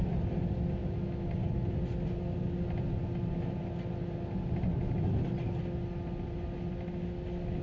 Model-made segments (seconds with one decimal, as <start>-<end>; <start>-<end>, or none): 0.8-1.3